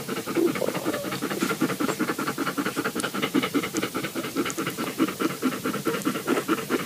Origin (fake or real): fake